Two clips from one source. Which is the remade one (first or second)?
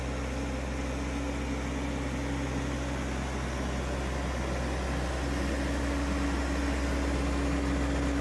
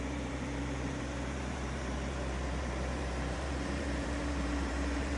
second